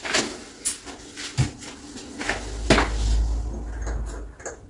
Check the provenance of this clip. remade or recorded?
recorded